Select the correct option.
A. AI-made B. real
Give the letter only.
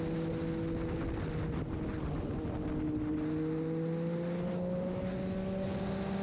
B